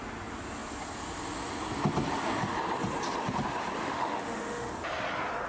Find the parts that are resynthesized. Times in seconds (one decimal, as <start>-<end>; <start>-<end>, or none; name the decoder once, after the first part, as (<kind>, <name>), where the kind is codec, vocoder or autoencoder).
3.8-4.7 (autoencoder, DAC-VAE)